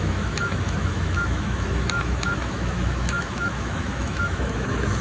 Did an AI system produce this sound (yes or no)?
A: yes